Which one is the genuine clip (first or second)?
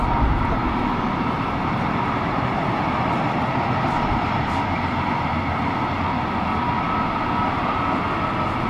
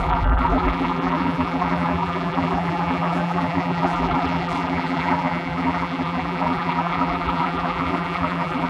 first